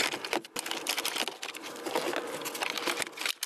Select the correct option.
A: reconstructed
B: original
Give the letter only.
B